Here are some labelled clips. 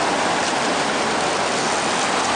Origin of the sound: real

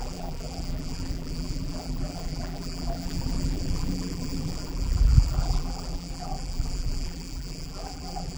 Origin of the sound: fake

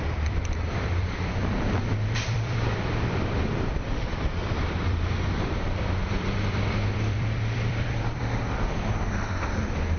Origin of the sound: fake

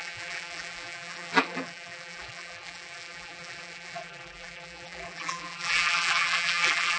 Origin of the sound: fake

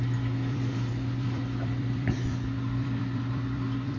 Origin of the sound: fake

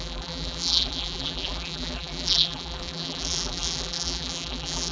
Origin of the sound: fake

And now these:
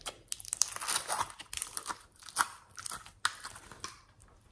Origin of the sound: real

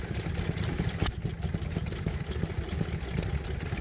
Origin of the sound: real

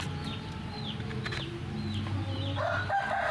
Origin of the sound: real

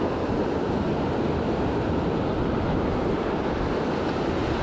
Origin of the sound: real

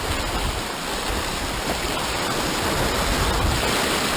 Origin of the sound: real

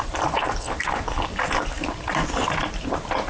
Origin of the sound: fake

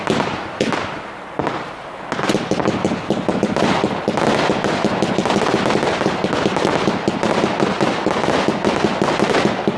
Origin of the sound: real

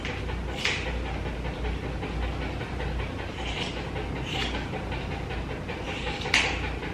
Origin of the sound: real